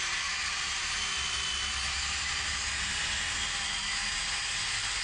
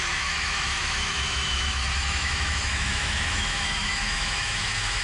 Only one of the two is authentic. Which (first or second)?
first